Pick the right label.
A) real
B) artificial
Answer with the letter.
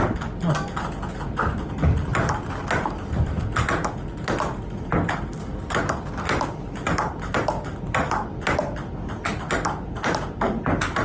A